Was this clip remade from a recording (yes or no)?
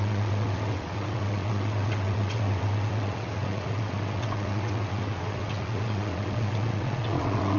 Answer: yes